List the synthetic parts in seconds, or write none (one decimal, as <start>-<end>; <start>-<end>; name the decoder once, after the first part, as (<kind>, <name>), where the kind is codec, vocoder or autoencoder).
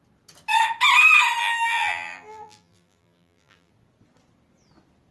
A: 1.4-3.7 (vocoder, BigVGAN v2)